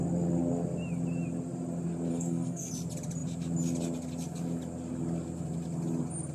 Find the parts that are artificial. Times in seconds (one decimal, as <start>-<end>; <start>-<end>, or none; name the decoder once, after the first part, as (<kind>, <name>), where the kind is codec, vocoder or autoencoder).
2.1-2.7 (codec, SNAC)